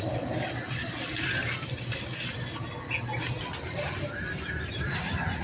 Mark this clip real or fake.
real